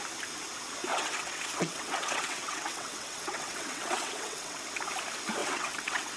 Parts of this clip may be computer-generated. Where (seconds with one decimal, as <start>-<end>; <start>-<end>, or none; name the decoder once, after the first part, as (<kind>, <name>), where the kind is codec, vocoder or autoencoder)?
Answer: 0.9-4.6 (vocoder, WaveNeXt); 5.4-6.2